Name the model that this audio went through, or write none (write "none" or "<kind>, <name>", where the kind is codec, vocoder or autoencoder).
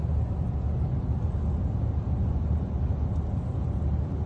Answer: none